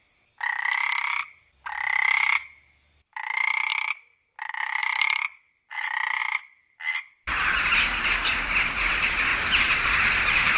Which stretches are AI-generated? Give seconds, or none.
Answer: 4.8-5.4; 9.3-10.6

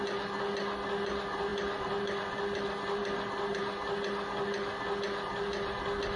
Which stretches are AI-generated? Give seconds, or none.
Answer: none